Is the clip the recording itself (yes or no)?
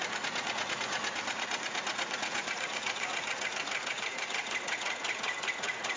no